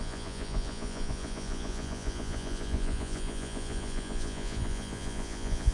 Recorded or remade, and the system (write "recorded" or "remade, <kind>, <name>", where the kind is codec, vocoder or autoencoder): remade, vocoder, Vocos